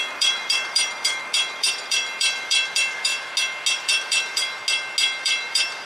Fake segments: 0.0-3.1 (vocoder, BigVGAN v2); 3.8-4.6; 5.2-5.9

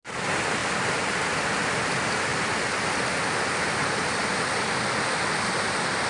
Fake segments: none

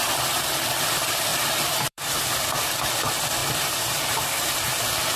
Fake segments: 1.3-2.2 (vocoder, BigVGAN v2); 3.4-4.7

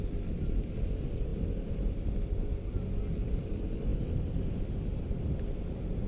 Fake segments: none

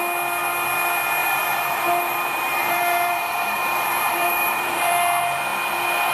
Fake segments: 1.2-4.9 (vocoder, BigVGAN v2)

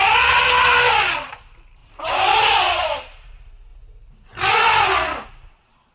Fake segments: 1.8-3.3 (vocoder, BigVGAN v2)

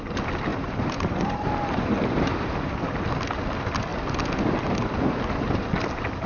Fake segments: 0.5-2.8 (vocoder, BigVGAN v2)

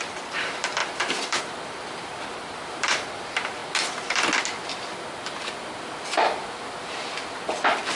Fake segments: 0.0-3.6 (vocoder, BigVGAN v2)